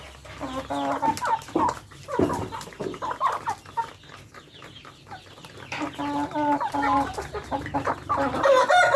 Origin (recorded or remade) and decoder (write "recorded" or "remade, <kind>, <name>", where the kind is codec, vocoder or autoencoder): recorded